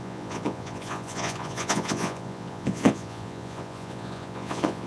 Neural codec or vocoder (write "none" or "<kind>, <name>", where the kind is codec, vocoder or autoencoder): vocoder, Vocos